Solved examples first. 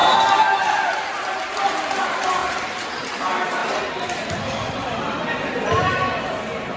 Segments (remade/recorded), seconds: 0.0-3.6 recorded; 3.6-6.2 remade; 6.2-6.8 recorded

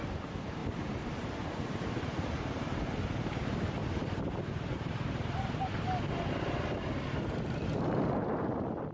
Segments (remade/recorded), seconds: 0.0-0.6 remade; 0.6-1.5 recorded; 1.5-3.8 remade; 3.8-4.5 recorded; 4.5-8.9 remade

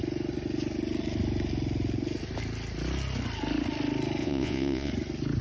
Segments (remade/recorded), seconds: 0.0-4.2 recorded; 4.2-4.9 remade; 4.9-5.4 recorded